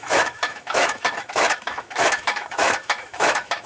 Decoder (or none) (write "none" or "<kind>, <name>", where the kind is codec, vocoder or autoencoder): autoencoder, DAC-VAE